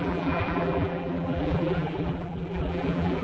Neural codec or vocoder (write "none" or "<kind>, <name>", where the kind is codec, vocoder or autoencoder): vocoder, BigVGAN v2